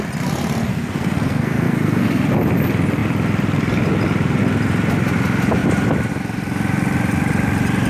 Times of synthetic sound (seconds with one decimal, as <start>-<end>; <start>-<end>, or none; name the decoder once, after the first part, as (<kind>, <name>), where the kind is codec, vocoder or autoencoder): 0.7-2.3 (codec, SNAC)